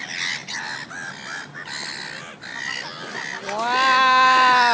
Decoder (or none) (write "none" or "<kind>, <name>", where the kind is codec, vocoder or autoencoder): none